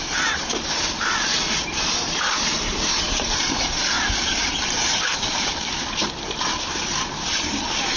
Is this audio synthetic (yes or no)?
yes